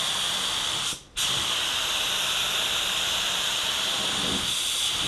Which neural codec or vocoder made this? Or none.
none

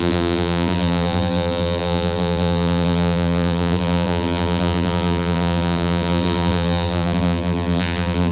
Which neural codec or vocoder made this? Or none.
vocoder, BigVGAN v2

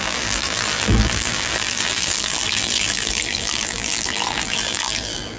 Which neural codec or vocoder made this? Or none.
vocoder, BigVGAN v2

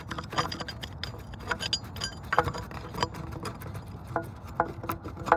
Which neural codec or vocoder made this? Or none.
none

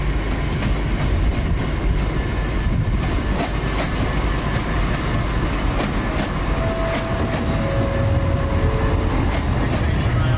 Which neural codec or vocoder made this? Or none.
none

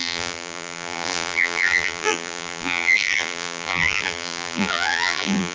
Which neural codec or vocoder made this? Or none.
vocoder, BigVGAN v2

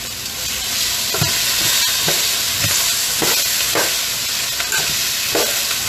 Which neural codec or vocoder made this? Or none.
none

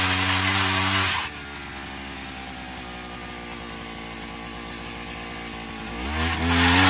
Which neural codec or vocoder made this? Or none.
none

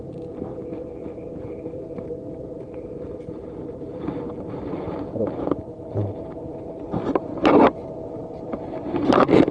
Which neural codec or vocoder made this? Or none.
vocoder, BigVGAN v2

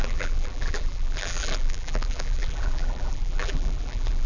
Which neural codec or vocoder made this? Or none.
vocoder, BigVGAN v2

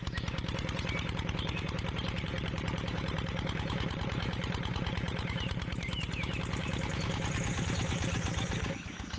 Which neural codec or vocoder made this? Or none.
vocoder, BigVGAN v2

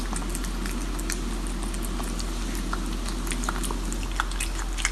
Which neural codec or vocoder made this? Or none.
none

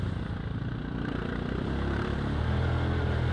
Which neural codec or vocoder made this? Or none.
none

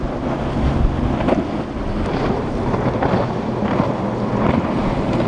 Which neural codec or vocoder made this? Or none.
none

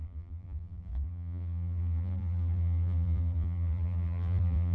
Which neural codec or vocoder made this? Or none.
vocoder, BigVGAN v2